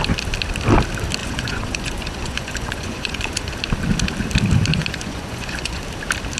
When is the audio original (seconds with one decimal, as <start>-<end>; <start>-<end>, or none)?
0.0-1.2; 3.5-4.7; 5.8-6.4

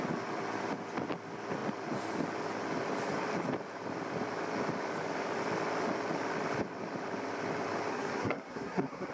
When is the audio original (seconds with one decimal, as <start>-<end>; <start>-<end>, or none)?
0.0-7.9

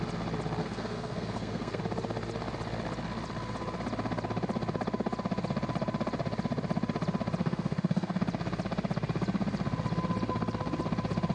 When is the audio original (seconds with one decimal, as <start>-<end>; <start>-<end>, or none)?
0.0-0.6; 1.8-7.4; 8.2-11.3

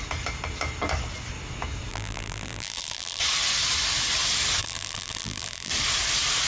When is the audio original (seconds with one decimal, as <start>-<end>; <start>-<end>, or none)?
0.0-1.9; 3.2-4.6; 5.7-6.5

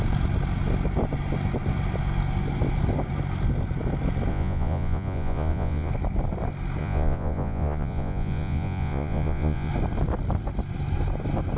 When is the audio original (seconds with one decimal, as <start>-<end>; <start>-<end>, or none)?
0.0-4.3; 5.9-6.8; 9.7-11.6

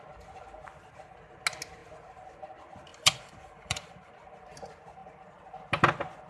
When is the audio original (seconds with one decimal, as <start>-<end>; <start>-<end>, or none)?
0.0-2.9; 4.1-6.3